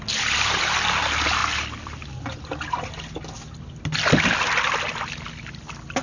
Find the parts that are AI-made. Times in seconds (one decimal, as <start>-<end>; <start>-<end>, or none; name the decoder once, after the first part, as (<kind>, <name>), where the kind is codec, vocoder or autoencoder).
none

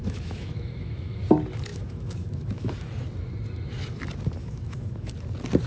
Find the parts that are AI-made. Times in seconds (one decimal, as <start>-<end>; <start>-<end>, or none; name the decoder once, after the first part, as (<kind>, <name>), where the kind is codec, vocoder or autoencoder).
0.0-1.2 (autoencoder, DAC-VAE); 1.7-2.7; 4.4-5.1

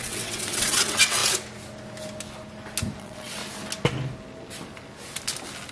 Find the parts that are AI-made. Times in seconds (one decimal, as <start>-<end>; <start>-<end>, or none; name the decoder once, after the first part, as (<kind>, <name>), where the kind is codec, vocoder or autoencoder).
0.0-1.2 (vocoder, WaveNeXt); 3.0-3.4

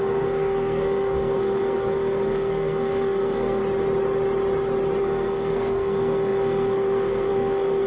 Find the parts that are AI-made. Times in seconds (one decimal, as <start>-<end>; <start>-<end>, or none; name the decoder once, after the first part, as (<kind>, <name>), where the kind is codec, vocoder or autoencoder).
0.0-3.6 (codec, SNAC); 5.0-7.9

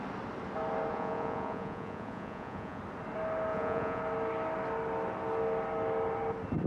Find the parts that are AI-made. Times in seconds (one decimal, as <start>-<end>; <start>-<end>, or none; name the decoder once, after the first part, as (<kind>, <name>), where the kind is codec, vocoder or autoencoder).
0.9-2.8 (vocoder, Vocos); 3.5-4.0